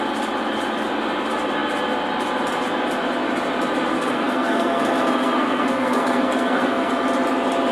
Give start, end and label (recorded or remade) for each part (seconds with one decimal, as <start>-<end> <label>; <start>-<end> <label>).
0.0-3.9 recorded; 3.9-6.9 remade; 6.9-7.7 recorded